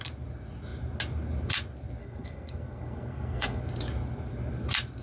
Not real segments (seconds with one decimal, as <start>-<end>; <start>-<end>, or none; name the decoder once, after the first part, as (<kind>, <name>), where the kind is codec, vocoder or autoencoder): 2.0-3.6 (codec, SNAC)